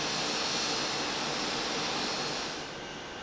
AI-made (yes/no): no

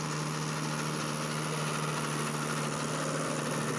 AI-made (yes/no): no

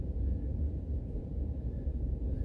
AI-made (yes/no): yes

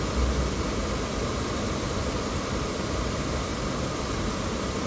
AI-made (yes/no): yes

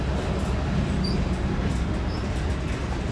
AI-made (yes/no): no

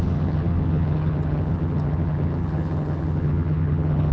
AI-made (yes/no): yes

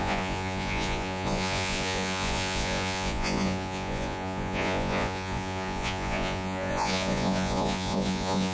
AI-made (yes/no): yes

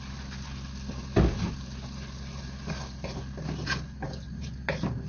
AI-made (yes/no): no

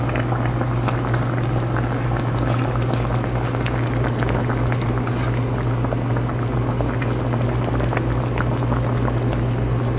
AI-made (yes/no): no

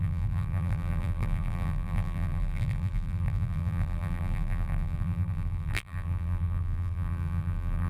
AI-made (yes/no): yes